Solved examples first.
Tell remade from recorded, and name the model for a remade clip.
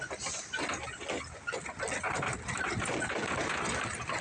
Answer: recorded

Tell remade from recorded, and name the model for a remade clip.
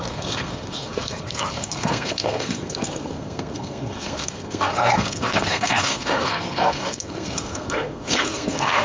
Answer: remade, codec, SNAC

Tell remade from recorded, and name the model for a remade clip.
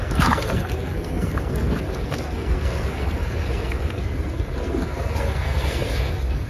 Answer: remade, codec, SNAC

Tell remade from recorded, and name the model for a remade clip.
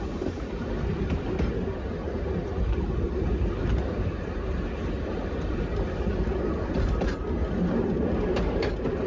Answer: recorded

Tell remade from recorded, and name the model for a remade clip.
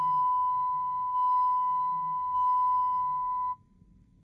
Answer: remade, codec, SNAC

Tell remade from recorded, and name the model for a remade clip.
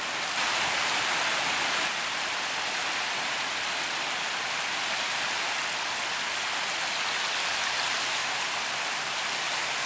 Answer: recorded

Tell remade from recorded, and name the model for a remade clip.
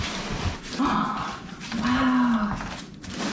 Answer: recorded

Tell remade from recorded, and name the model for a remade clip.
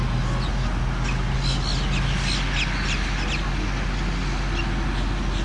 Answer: recorded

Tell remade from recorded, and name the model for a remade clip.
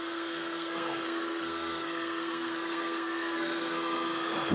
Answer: remade, codec, SNAC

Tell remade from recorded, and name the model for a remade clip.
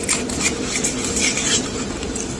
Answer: recorded